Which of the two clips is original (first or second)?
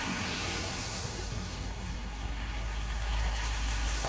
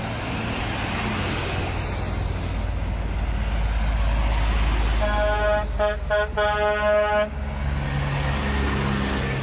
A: second